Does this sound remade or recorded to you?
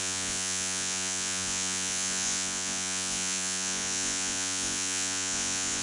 remade